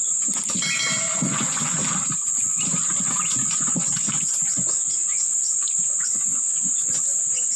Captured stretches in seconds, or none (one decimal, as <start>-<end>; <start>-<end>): 0.0-0.8; 1.8-3.5